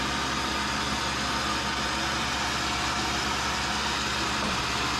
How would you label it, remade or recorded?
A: recorded